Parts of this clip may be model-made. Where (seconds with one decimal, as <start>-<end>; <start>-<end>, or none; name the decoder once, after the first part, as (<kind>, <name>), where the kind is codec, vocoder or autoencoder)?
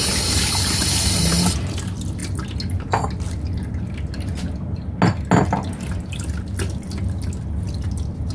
none